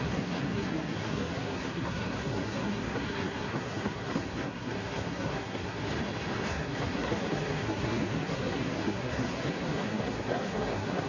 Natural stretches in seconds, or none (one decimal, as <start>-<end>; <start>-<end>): 5.9-6.5